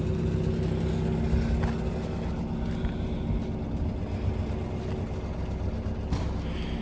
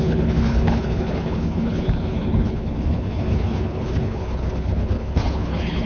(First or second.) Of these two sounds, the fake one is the second